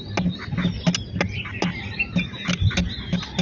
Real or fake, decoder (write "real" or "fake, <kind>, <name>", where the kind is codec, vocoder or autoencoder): real